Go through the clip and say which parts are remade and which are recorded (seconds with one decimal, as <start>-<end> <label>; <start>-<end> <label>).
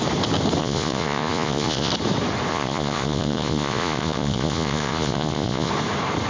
0.0-0.6 recorded; 0.6-1.9 remade; 1.9-2.5 recorded; 2.5-5.7 remade; 5.7-6.3 recorded